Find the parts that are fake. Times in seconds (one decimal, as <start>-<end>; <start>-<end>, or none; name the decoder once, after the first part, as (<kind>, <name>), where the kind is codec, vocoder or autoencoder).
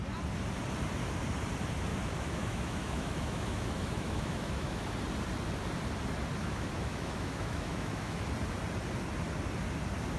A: 1.9-4.9 (autoencoder, DAC-VAE); 6.4-8.2